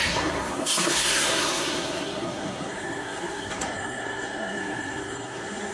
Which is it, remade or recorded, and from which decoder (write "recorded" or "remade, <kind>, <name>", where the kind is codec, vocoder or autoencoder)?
remade, codec, SNAC